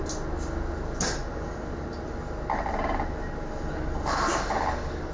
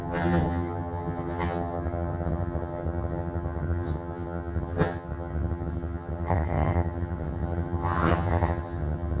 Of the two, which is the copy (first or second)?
second